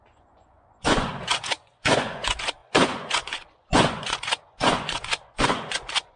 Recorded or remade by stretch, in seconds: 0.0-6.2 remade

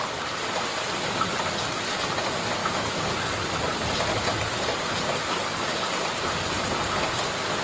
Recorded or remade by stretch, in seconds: 0.0-7.6 recorded

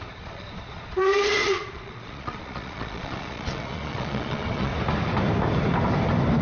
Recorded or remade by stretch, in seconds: 0.0-4.7 remade; 4.7-6.4 recorded

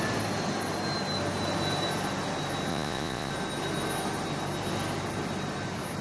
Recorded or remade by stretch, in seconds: 0.0-2.7 recorded; 2.7-3.3 remade; 3.3-6.0 recorded

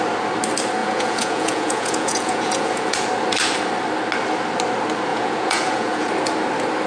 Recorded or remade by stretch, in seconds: 0.0-0.8 recorded; 0.8-2.9 remade; 2.9-5.1 recorded; 5.1-6.1 remade; 6.1-6.9 recorded

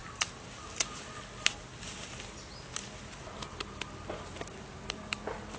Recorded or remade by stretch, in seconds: 0.0-5.6 recorded

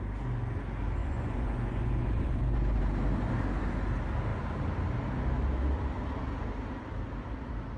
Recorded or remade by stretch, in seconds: 0.0-1.0 recorded; 1.0-2.8 remade; 2.8-7.8 recorded

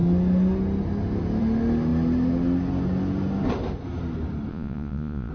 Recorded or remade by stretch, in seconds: 0.0-4.5 recorded; 4.5-5.3 remade